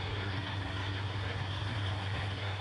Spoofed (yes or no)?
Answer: yes